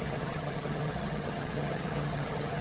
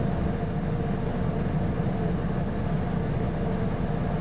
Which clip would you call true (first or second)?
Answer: second